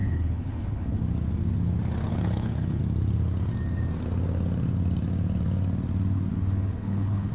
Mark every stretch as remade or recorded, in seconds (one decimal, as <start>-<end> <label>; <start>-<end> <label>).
0.0-1.0 remade; 1.0-2.1 recorded; 2.1-2.8 remade; 2.8-6.3 recorded; 6.3-7.3 remade